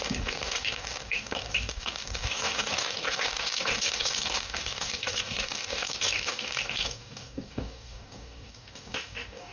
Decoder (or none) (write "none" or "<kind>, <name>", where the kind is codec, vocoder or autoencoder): codec, DAC